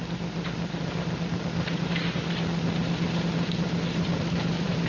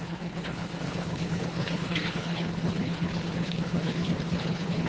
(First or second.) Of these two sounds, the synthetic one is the second